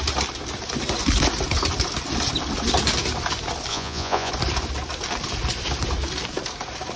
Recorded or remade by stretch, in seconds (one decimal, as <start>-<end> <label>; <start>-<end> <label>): 0.0-3.7 recorded; 3.7-4.3 remade; 4.3-7.0 recorded